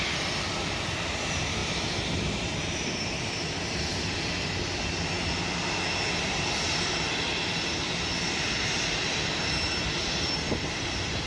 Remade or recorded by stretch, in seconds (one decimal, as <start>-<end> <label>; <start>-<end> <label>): 0.0-3.9 remade; 3.9-6.2 recorded; 6.2-11.3 remade